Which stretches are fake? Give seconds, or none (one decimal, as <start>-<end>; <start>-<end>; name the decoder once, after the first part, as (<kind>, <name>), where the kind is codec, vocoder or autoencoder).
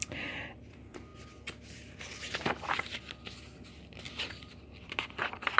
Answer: 0.0-1.1 (vocoder, BigVGAN v2); 4.5-5.6